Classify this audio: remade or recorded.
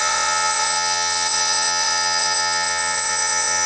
remade